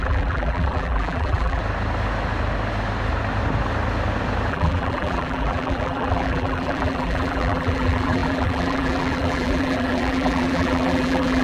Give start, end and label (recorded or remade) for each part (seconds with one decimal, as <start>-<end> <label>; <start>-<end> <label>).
0.0-1.6 remade; 1.6-4.5 recorded; 4.5-11.4 remade